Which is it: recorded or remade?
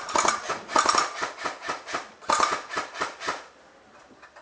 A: recorded